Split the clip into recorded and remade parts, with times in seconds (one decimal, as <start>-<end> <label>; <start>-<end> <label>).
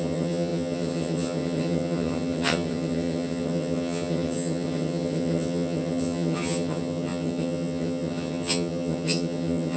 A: 0.0-9.8 remade